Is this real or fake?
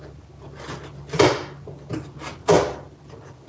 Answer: real